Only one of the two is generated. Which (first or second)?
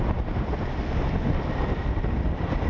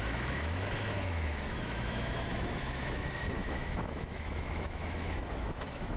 second